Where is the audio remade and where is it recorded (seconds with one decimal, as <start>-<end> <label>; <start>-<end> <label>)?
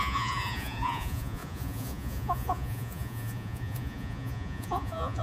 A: 0.0-5.2 remade